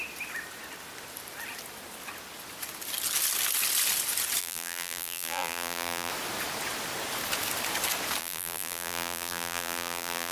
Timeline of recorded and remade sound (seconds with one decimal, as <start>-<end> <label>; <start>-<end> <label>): 0.0-4.4 recorded; 4.4-6.1 remade; 6.1-8.2 recorded; 8.2-10.3 remade